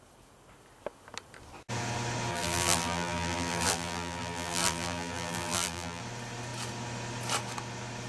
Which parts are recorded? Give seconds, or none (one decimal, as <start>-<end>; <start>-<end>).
0.0-2.3; 6.0-8.1